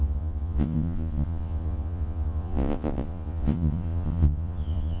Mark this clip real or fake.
fake